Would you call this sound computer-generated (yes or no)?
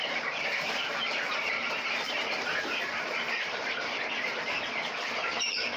yes